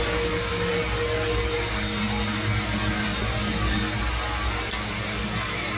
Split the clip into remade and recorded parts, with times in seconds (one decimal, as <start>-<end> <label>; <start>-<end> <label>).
0.0-5.8 recorded